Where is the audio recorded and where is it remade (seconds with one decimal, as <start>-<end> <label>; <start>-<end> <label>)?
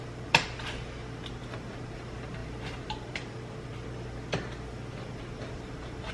0.0-6.1 recorded